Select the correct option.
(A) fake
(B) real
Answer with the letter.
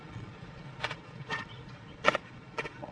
A